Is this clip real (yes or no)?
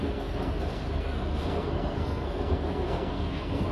no